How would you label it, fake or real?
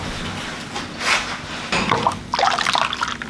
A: real